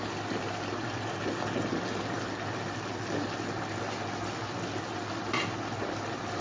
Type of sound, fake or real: real